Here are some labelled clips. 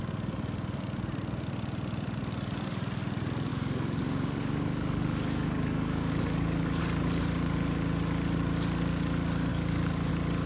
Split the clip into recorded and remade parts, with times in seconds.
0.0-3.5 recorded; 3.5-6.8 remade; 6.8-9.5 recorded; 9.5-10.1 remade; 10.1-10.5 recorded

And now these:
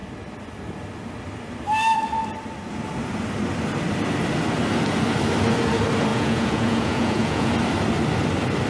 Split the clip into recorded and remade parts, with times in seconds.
0.0-6.1 recorded; 6.1-7.5 remade; 7.5-8.7 recorded

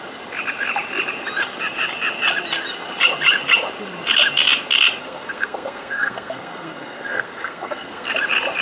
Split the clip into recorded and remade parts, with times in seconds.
0.0-5.0 recorded; 5.0-8.1 remade; 8.1-8.6 recorded

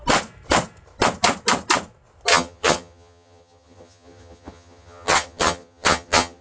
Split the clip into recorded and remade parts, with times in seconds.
0.0-2.3 recorded; 2.3-6.4 remade